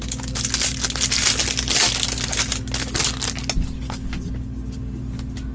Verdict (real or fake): real